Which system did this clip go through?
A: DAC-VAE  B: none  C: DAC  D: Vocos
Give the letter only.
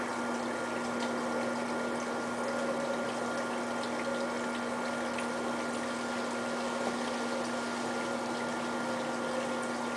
B